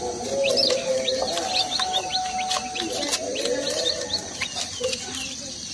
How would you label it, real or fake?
real